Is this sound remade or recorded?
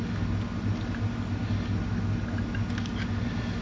recorded